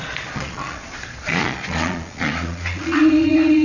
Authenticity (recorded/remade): remade